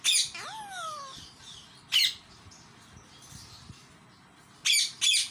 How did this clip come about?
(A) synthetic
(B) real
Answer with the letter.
B